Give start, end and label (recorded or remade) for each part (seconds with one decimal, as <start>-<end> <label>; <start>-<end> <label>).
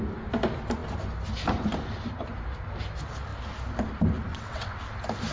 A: 0.0-4.3 recorded; 4.3-4.8 remade; 4.8-5.3 recorded